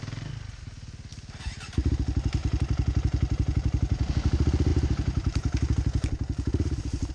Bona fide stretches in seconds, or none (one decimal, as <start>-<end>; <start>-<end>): 0.0-1.1; 1.9-2.4; 4.1-4.7